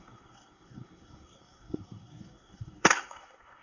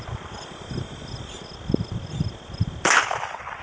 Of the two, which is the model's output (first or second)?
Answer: first